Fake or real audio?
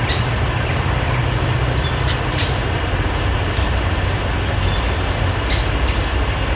real